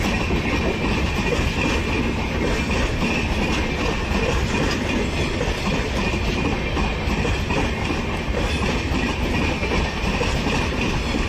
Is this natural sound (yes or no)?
yes